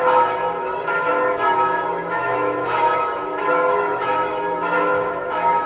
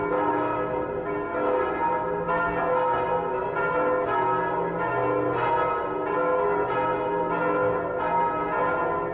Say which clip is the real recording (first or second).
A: second